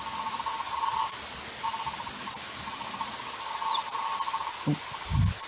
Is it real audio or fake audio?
real